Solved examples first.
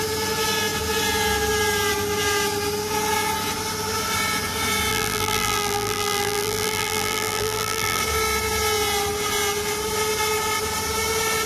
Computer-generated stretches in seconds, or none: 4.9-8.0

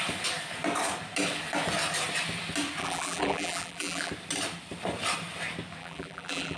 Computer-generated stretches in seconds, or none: 2.8-4.1; 5.8-6.6

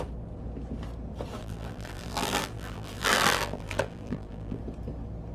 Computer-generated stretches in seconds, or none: 1.4-4.6

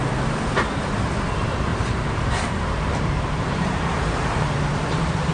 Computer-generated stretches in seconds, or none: 1.7-5.3

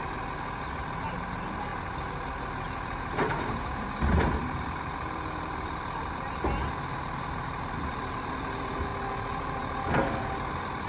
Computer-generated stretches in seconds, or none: 0.0-8.9; 10.5-10.9